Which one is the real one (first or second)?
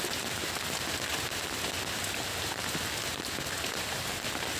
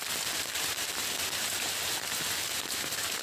first